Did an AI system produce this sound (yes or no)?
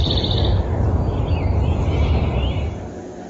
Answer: no